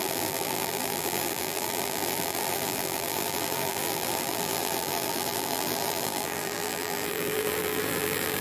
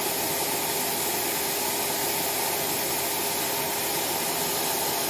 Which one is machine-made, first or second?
first